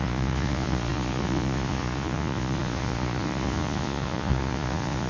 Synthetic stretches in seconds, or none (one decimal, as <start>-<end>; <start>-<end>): 0.0-5.1